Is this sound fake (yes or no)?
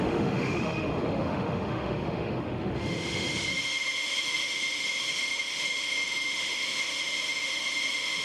yes